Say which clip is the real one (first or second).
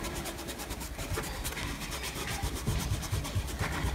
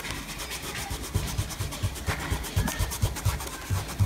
second